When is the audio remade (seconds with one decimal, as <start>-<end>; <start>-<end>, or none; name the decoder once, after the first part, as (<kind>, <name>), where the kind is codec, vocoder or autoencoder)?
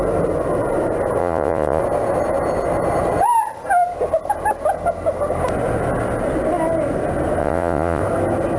1.2-1.8 (vocoder, Vocos); 7.4-8.0